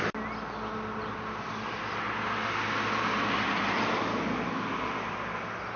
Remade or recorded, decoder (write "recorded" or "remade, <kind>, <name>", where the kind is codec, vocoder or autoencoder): recorded